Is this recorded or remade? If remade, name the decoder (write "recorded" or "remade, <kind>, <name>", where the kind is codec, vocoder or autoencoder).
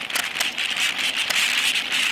remade, vocoder, BigVGAN v2